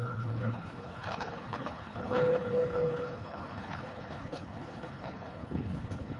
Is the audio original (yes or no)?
no